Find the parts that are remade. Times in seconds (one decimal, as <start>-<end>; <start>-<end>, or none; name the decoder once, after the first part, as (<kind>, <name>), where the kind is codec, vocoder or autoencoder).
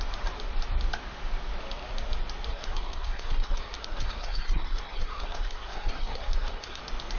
2.5-6.8 (codec, SNAC)